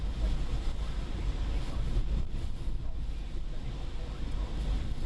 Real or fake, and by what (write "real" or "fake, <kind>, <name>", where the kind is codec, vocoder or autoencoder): real